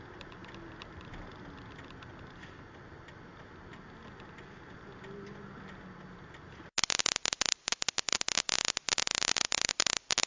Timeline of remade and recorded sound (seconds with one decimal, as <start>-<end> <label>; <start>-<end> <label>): 0.0-10.3 recorded